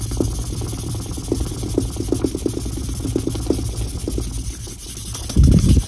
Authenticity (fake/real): real